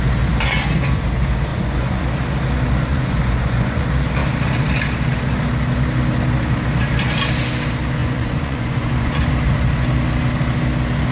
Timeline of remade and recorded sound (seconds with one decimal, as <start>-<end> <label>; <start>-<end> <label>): 0.0-1.5 recorded; 1.5-2.0 remade; 2.0-2.9 recorded; 2.9-3.8 remade; 3.8-8.0 recorded; 8.0-9.3 remade; 9.3-11.1 recorded